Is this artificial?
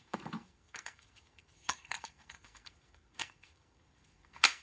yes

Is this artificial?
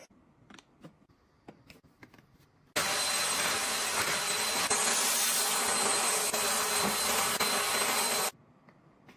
no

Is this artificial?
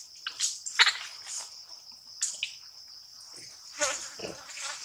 no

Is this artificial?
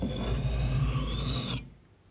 no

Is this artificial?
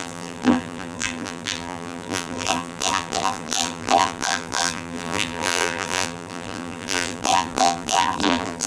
yes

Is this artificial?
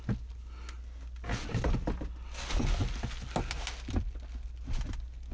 no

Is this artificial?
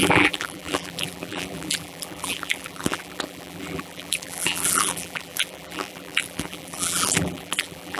yes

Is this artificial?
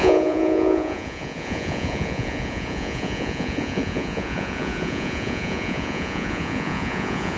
yes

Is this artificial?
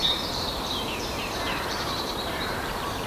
yes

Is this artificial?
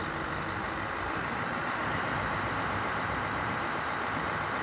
no